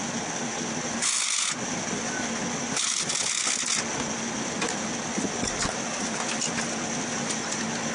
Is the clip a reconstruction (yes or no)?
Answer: no